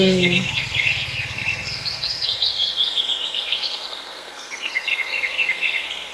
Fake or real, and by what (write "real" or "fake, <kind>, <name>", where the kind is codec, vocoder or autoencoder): fake, codec, SNAC